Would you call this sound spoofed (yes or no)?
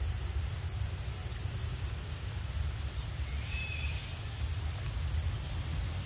no